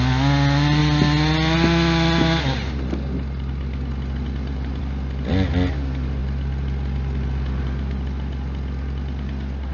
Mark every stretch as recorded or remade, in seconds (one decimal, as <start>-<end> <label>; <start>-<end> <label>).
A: 0.0-9.7 recorded